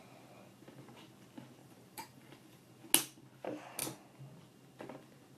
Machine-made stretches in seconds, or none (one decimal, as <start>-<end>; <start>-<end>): 1.6-2.7